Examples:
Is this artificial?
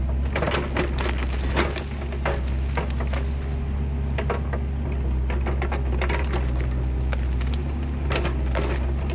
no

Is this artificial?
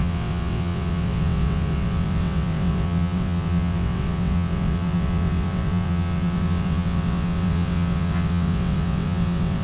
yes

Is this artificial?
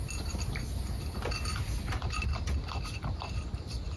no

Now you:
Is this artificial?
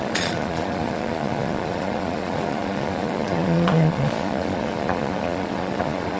yes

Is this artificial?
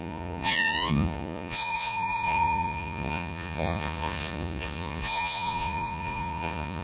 yes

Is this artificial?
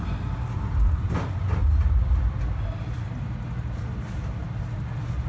no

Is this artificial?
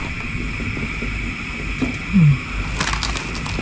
no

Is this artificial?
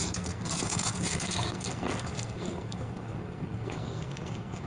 yes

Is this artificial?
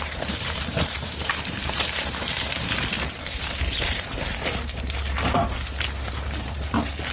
yes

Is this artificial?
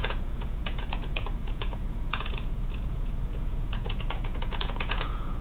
yes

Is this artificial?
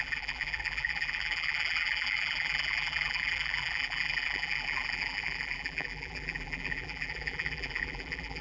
yes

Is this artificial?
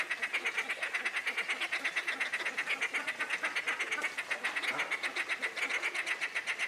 no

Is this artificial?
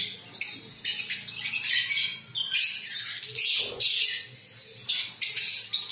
no